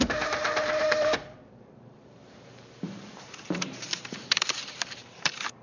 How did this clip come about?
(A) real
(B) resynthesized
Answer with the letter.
B